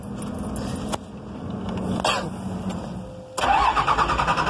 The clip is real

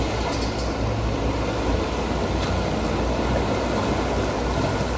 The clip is real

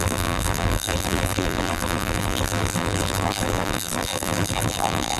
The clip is fake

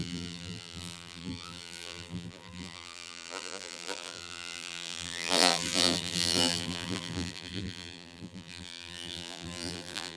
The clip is fake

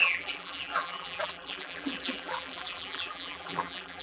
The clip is fake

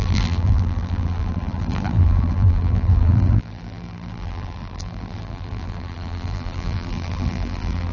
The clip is fake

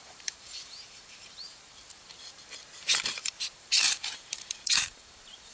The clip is fake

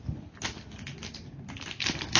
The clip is real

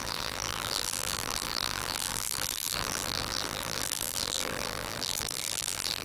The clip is fake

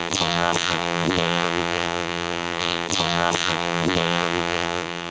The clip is fake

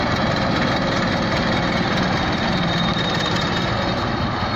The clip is fake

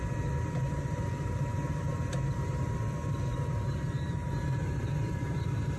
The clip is fake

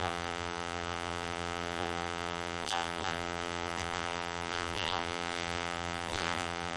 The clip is fake